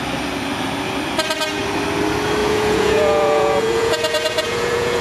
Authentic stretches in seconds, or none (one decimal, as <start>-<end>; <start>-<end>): 0.0-2.4

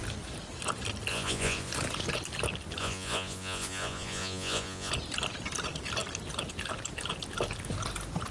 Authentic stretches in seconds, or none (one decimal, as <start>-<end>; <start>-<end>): 0.0-1.1; 1.7-2.8; 4.9-8.3